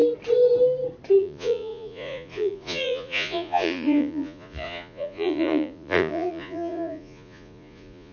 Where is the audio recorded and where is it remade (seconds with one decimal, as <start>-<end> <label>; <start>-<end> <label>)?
0.0-1.2 recorded; 1.2-8.1 remade